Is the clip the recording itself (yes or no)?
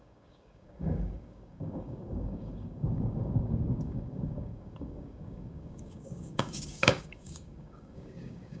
no